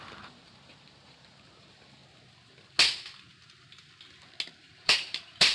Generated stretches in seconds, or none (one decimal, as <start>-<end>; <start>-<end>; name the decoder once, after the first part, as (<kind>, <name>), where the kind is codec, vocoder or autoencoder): 0.0-2.0 (vocoder, BigVGAN v2); 4.6-5.5